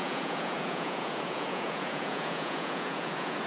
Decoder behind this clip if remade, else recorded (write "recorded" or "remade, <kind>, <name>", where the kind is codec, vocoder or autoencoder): remade, vocoder, Vocos